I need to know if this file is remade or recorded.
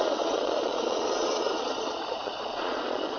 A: remade